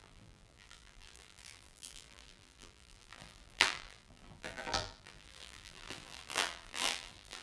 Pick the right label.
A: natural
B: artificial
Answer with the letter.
B